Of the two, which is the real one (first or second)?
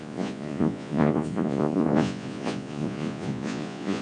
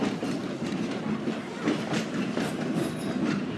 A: second